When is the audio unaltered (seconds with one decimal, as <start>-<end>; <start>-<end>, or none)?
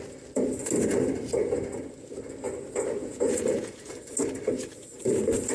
0.0-3.0; 3.9-5.5